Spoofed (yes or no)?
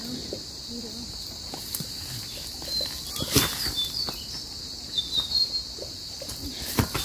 no